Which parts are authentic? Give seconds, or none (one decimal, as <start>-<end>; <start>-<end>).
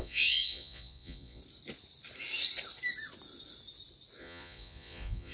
1.4-4.2